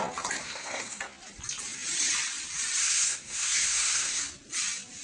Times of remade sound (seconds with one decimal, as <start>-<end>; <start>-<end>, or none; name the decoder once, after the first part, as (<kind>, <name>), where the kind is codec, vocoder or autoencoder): 0.4-1.0 (codec, SNAC); 2.8-4.2